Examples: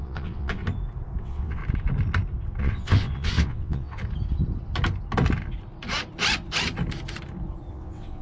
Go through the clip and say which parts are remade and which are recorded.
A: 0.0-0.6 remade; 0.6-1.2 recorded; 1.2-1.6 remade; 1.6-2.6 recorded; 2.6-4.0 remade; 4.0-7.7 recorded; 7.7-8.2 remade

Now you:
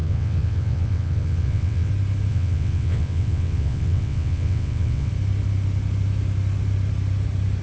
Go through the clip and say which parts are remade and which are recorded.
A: 0.0-1.9 remade; 1.9-2.3 recorded; 2.3-5.1 remade; 5.1-7.6 recorded

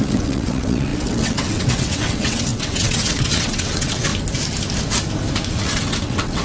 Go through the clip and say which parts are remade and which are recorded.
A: 0.0-4.1 remade; 4.1-5.5 recorded; 5.5-6.4 remade

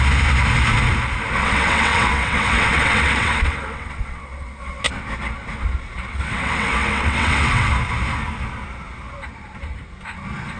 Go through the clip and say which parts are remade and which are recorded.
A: 0.0-1.4 recorded; 1.4-4.8 remade; 4.8-6.1 recorded; 6.1-7.7 remade; 7.7-10.6 recorded

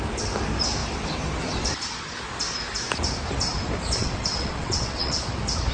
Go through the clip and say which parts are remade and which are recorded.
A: 0.0-4.0 recorded; 4.0-5.2 remade; 5.2-5.7 recorded

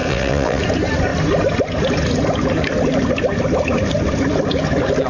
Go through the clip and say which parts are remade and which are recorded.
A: 0.0-0.6 remade; 0.6-5.1 recorded